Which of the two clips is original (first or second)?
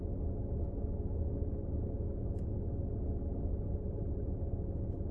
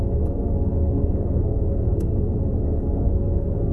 first